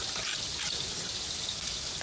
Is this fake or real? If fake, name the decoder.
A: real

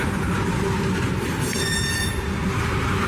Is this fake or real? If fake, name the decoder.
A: fake, vocoder, BigVGAN v2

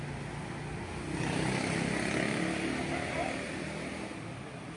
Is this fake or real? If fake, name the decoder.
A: real